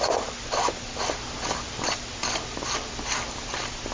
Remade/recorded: recorded